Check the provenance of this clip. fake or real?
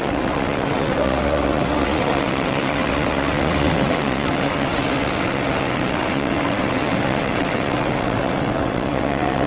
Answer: fake